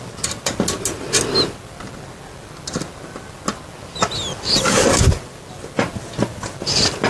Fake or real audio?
real